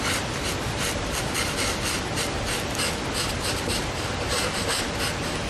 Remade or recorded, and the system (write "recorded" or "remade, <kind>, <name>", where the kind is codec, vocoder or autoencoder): recorded